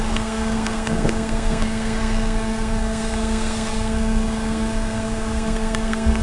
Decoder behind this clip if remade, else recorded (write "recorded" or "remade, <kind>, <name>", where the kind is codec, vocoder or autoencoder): remade, codec, SNAC